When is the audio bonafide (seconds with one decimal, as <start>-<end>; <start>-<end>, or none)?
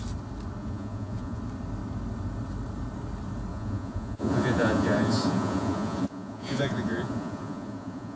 0.0-0.6; 1.4-3.5